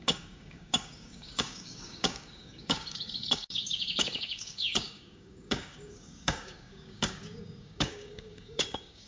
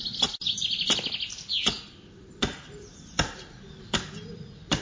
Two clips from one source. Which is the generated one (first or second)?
first